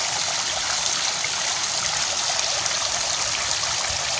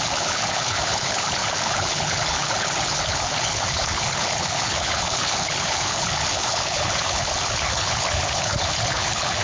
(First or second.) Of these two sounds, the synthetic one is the second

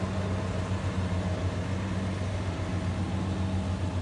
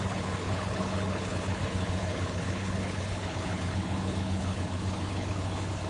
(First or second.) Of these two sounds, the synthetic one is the second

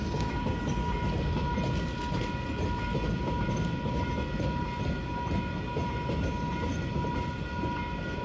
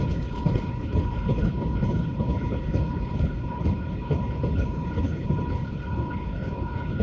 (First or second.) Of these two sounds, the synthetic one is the second